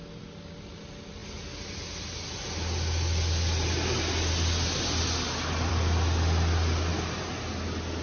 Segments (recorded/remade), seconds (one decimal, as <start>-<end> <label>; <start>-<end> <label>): 0.0-8.0 recorded